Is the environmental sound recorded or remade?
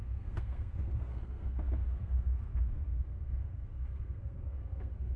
remade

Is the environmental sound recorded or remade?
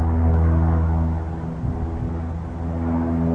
recorded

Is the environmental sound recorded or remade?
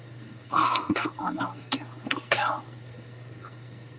remade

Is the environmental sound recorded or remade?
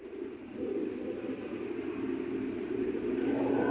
recorded